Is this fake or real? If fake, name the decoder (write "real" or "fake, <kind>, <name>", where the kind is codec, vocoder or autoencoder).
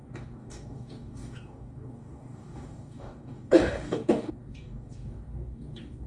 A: fake, codec, DAC